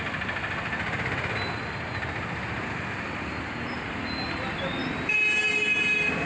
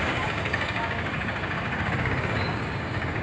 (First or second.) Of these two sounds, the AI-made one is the second